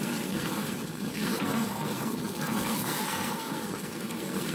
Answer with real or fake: fake